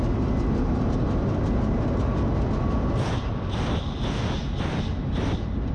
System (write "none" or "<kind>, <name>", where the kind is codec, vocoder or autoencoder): none